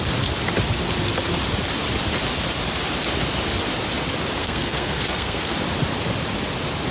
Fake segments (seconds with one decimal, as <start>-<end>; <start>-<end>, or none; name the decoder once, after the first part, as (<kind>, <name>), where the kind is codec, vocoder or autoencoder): 4.4-5.5 (codec, SNAC)